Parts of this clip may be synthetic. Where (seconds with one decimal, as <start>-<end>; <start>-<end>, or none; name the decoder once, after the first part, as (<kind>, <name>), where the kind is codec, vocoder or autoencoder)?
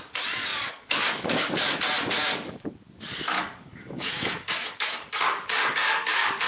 0.5-1.8 (codec, DAC); 2.3-6.5